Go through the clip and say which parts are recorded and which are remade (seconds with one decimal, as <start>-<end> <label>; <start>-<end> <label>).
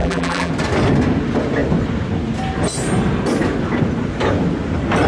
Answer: 0.0-0.5 remade; 0.5-5.1 recorded